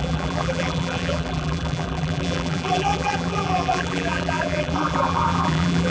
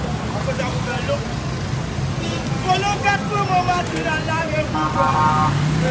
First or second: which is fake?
first